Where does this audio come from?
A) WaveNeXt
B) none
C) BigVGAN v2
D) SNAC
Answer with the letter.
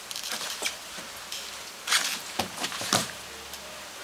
C